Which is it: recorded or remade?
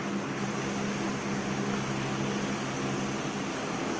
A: recorded